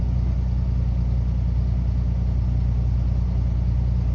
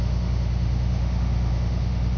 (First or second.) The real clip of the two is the first